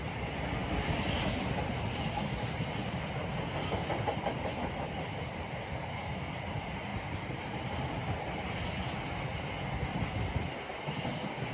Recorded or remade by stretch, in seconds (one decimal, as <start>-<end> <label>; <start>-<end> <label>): 0.0-6.9 recorded; 6.9-7.5 remade; 7.5-11.5 recorded